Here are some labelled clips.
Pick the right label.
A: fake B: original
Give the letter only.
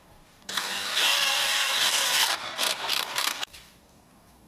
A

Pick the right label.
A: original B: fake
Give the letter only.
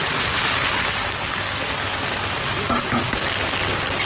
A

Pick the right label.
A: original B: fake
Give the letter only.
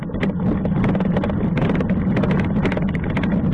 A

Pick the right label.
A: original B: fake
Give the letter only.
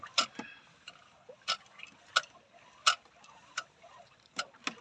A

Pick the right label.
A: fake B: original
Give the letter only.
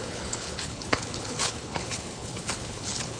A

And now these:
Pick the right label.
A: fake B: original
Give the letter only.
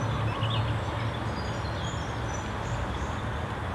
B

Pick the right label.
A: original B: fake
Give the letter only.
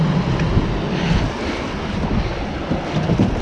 A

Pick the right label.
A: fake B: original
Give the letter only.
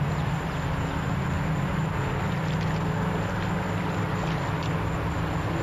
B